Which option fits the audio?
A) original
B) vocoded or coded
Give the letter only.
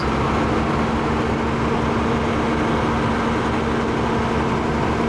A